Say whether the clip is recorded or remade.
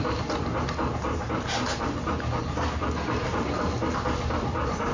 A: recorded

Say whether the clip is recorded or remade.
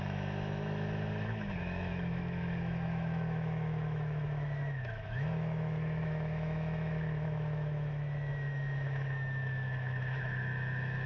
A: remade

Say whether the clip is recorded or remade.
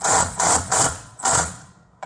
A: remade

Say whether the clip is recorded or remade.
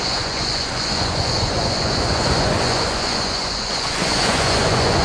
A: remade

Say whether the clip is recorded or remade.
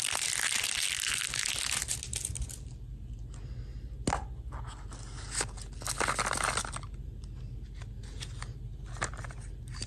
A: recorded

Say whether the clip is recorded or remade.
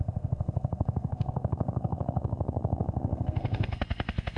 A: remade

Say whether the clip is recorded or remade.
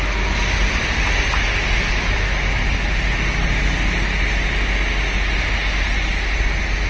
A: recorded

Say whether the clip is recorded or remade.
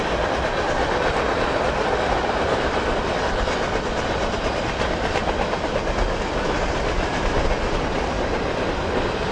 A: recorded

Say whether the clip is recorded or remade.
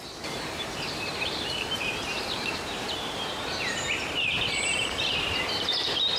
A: remade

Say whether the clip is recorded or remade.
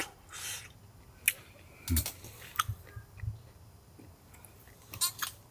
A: recorded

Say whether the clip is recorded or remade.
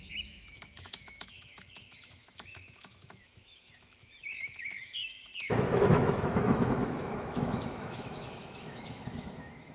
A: remade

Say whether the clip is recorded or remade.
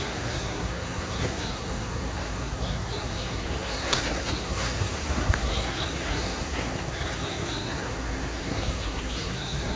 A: remade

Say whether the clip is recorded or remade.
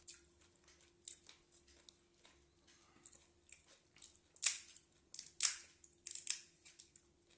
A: recorded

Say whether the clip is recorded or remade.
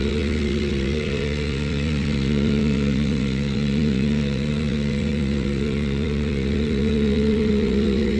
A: remade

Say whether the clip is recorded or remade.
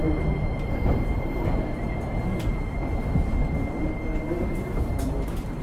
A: remade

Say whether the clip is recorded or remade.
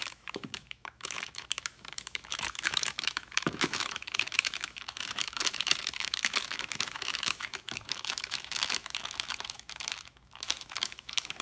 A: remade